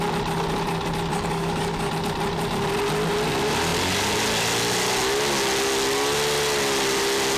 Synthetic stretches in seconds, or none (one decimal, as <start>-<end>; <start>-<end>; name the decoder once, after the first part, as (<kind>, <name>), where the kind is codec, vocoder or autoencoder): 1.1-1.9 (codec, DAC)